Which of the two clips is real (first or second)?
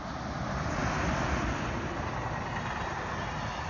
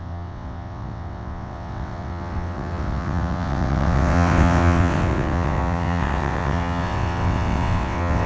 first